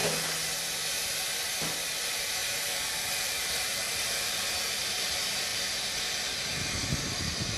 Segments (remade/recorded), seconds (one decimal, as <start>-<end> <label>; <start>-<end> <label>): 0.0-2.0 recorded; 2.0-7.6 remade